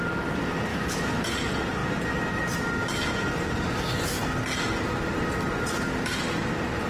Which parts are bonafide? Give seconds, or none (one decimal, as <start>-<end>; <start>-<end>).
0.0-0.7; 1.2-6.9